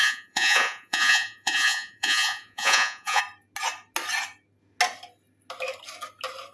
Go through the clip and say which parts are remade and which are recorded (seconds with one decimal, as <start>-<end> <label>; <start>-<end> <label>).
0.0-3.2 remade; 3.2-6.5 recorded